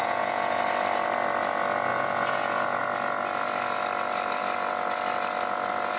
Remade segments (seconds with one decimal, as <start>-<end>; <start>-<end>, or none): 0.0-0.6; 1.9-2.8